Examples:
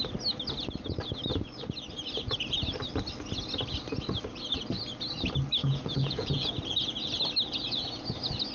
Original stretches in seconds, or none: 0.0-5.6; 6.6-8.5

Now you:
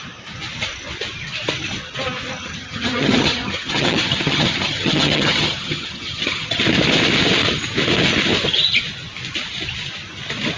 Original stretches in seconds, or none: 0.0-2.4; 6.6-10.6

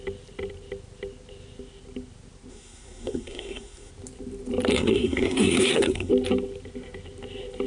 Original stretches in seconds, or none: 0.0-2.5; 3.9-4.7; 6.1-7.7

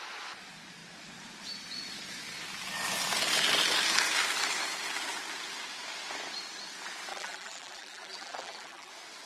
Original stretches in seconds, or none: 0.0-7.1; 8.9-9.3

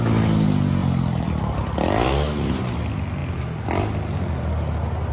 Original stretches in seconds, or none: 0.0-5.1